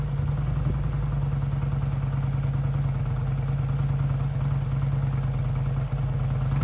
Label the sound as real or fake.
real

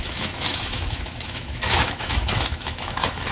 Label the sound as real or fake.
fake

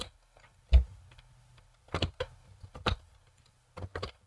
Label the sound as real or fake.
real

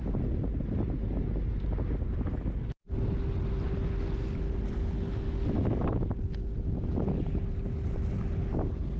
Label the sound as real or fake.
real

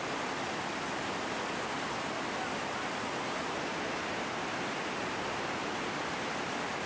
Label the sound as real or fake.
real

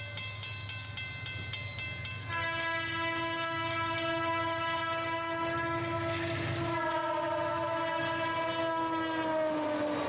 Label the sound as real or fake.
real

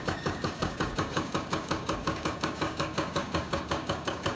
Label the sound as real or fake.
fake